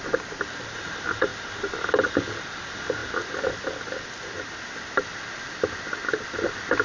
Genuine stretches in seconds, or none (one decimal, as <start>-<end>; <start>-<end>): 0.0-6.8